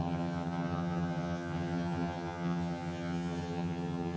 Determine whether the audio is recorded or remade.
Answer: remade